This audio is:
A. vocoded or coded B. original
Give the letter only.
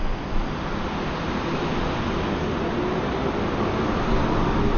B